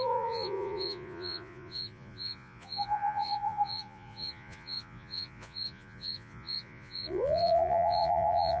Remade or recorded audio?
remade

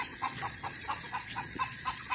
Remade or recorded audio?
remade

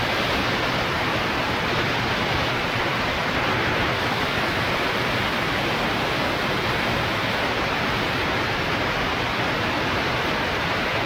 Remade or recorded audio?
remade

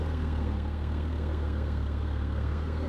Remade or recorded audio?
remade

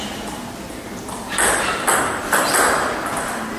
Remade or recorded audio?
recorded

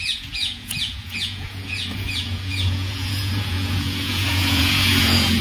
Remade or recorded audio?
remade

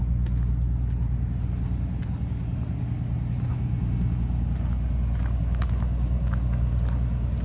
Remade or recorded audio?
recorded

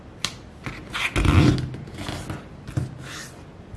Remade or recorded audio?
recorded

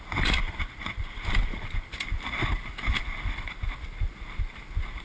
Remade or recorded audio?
recorded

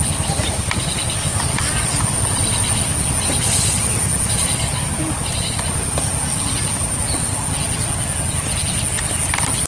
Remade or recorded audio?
recorded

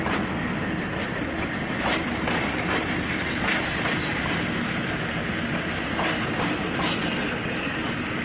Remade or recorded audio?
recorded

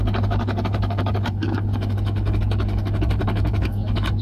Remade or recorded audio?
remade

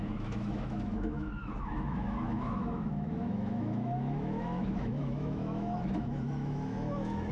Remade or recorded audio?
remade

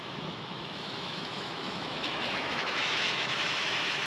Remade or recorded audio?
remade